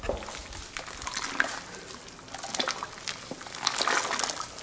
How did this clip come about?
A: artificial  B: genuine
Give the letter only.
B